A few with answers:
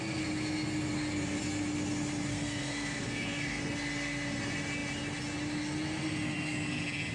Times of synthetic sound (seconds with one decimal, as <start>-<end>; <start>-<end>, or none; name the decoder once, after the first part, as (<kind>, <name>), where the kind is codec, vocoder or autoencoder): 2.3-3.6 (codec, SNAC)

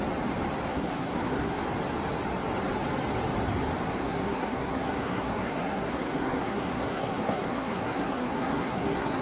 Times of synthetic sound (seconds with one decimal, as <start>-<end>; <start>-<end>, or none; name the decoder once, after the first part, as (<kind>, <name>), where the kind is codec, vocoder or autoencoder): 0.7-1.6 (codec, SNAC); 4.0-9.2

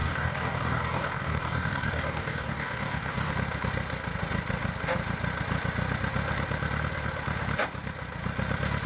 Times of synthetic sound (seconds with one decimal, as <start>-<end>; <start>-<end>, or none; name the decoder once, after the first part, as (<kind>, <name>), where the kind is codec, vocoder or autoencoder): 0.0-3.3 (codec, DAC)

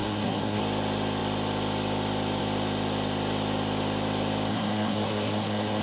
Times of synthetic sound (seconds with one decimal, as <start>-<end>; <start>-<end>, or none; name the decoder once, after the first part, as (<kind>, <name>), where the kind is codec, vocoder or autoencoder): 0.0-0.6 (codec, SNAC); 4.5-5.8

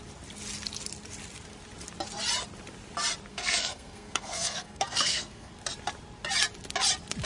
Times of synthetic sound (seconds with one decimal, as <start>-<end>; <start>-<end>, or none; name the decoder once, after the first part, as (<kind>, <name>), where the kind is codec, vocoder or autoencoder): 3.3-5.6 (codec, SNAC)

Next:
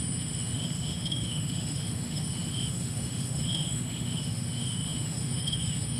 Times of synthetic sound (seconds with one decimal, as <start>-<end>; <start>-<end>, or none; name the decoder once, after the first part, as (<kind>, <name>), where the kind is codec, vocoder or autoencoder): 0.0-6.0 (autoencoder, DAC-VAE)